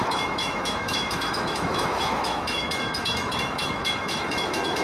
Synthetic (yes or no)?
yes